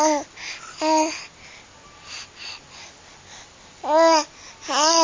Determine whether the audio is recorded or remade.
recorded